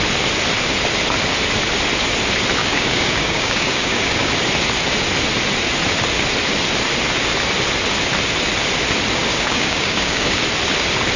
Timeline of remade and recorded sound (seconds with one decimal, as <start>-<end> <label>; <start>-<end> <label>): 0.0-2.6 recorded; 2.6-4.3 remade; 4.3-9.3 recorded; 9.3-10.4 remade; 10.4-11.2 recorded